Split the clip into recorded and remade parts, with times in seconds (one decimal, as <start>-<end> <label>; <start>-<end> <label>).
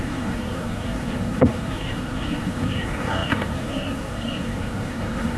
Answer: 0.0-5.4 remade